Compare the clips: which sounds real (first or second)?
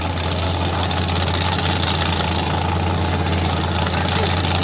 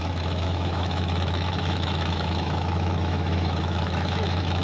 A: first